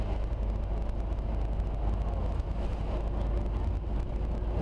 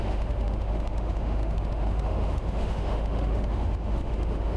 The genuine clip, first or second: first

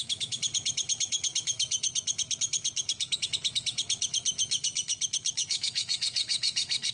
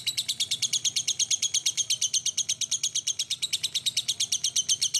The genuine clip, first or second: second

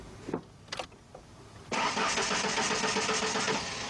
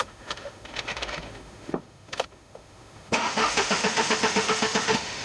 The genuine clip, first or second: first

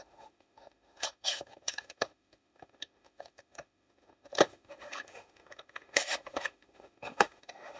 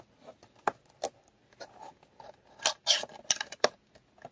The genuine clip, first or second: second